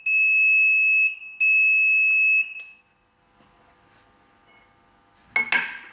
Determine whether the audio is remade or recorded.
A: recorded